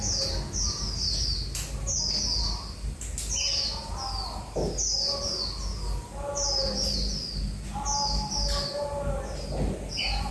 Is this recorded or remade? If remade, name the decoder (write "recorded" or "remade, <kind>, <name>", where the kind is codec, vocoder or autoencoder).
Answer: recorded